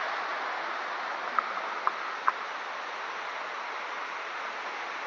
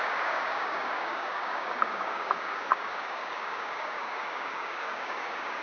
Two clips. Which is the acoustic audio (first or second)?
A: first